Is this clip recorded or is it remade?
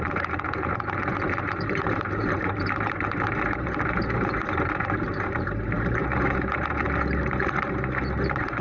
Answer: remade